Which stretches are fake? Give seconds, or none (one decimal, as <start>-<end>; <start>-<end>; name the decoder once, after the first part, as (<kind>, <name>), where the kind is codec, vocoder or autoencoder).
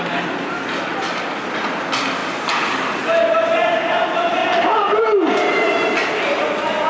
0.9-1.7 (vocoder, BigVGAN v2); 4.4-5.0